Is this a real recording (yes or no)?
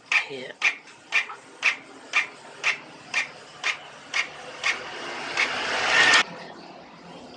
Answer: yes